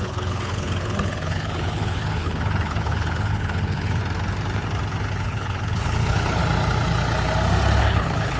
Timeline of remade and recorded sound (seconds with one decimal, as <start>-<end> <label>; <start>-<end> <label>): 0.0-4.0 remade; 4.0-5.1 recorded; 5.1-6.4 remade; 6.4-7.8 recorded; 7.8-8.4 remade

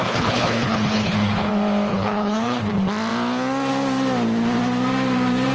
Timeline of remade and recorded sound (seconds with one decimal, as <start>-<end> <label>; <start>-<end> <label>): 0.0-1.5 remade; 1.5-1.9 recorded; 1.9-2.7 remade; 2.7-5.5 recorded

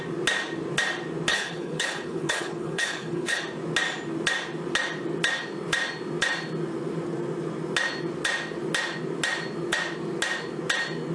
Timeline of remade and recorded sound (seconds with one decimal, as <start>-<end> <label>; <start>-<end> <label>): 0.0-1.3 recorded; 1.3-3.4 remade; 3.4-11.1 recorded

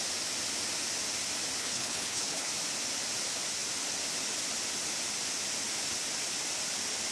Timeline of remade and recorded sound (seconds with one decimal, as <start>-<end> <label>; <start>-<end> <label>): 0.0-1.6 recorded; 1.6-2.5 remade; 2.5-7.1 recorded

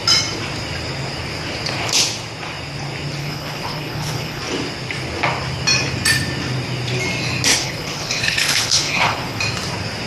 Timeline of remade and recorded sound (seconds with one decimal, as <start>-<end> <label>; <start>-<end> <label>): 0.0-3.2 recorded; 3.2-4.4 remade; 4.4-7.5 recorded; 7.5-9.4 remade; 9.4-10.1 recorded